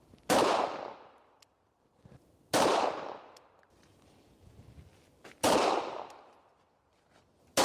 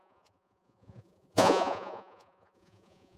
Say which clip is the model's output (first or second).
second